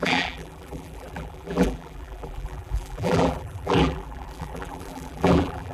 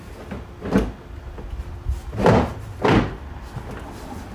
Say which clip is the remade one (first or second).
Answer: first